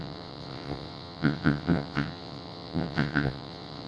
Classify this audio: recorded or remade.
remade